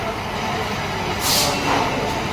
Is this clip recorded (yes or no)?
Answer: yes